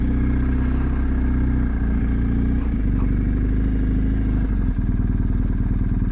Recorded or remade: recorded